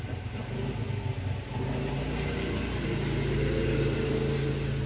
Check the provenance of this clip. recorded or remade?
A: recorded